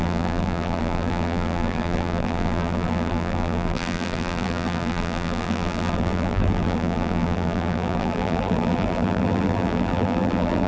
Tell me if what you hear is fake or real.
fake